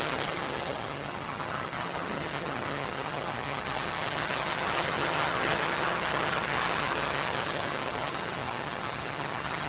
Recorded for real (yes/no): no